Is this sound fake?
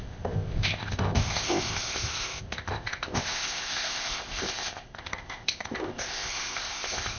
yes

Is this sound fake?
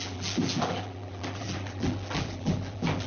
yes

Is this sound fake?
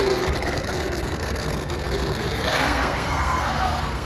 yes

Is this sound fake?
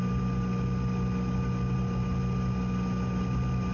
no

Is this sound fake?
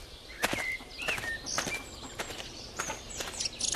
no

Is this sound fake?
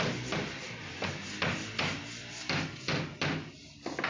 no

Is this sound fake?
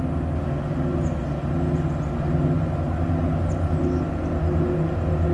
no